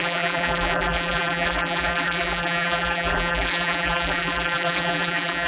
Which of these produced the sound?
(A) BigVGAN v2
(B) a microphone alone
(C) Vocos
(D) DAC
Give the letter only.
A